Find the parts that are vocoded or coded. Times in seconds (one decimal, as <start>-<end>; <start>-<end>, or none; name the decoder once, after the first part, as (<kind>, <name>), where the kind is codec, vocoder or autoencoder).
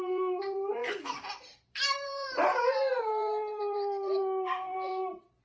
0.0-5.4 (vocoder, BigVGAN v2)